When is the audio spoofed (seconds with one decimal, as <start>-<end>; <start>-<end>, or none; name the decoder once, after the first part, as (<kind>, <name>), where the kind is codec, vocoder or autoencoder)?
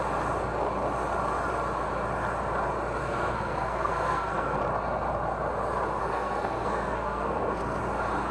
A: 3.0-4.6 (codec, SNAC); 6.0-7.8